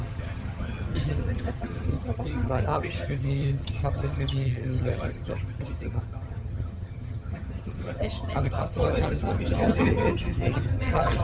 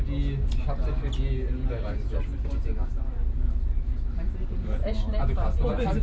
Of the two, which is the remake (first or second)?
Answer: first